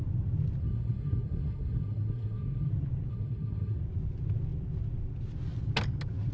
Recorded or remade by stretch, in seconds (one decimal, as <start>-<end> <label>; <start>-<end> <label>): 0.0-0.6 recorded; 0.6-2.7 remade; 2.7-3.1 recorded; 3.1-3.8 remade; 3.8-6.3 recorded